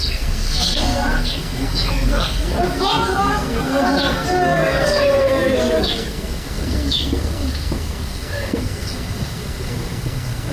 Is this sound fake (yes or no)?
yes